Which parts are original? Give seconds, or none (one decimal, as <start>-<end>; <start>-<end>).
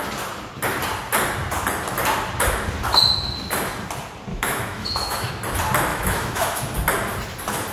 0.0-4.3; 5.3-5.9; 6.6-7.7